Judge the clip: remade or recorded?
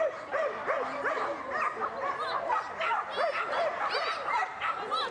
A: recorded